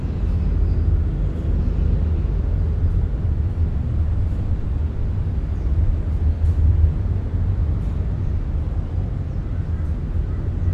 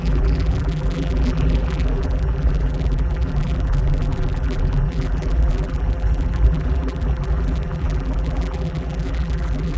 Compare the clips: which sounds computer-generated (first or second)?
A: second